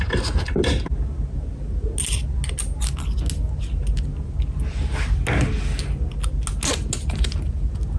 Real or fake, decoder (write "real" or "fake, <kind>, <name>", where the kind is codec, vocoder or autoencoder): real